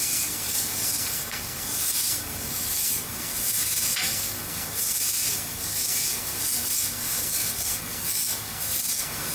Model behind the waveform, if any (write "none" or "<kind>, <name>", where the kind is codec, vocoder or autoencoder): codec, SNAC